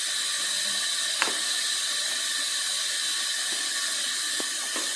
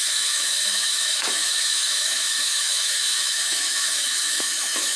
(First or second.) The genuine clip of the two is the first